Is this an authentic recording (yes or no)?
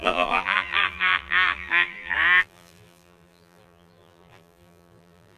no